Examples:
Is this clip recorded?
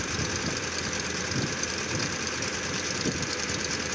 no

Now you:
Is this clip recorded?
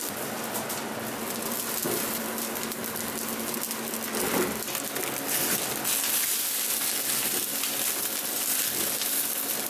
yes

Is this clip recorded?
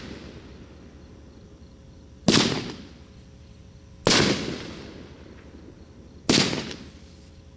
yes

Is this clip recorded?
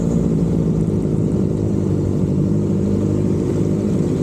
no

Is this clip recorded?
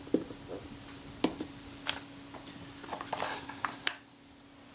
yes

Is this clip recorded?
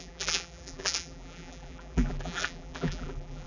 no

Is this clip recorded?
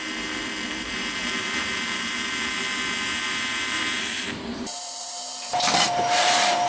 no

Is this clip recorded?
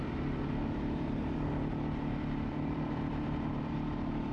no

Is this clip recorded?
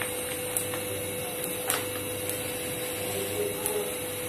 yes